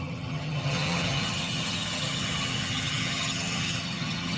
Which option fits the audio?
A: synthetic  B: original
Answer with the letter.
A